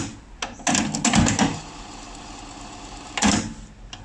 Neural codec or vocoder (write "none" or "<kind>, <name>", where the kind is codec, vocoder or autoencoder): none